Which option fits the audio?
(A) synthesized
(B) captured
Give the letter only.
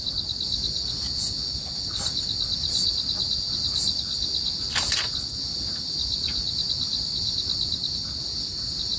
B